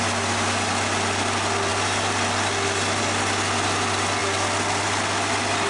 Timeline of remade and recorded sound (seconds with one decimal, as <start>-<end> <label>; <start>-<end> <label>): 0.0-5.7 recorded